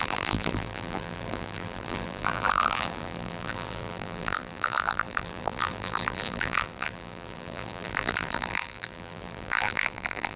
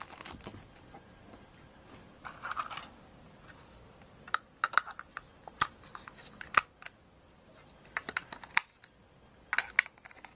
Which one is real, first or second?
second